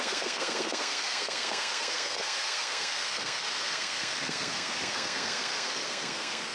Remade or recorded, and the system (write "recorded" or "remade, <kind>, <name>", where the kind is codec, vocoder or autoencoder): remade, codec, SNAC